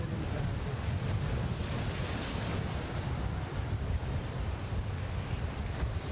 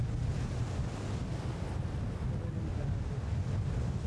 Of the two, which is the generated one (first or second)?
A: first